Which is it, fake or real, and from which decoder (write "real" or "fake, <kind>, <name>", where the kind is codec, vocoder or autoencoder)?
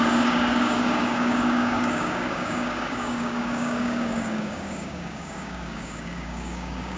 fake, codec, DAC